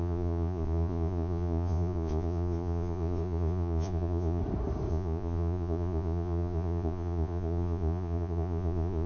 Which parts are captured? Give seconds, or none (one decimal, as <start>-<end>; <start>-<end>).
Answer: 4.4-4.9